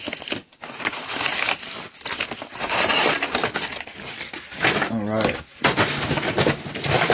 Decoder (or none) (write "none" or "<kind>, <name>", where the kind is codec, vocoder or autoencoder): none